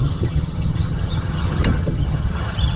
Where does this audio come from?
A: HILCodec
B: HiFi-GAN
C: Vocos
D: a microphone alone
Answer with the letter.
B